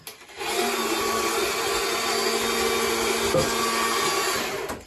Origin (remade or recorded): recorded